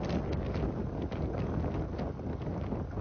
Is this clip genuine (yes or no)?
yes